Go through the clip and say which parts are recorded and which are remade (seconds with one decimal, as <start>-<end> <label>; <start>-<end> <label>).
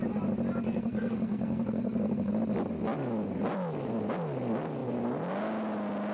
0.0-0.7 recorded; 0.7-2.3 remade; 2.3-6.1 recorded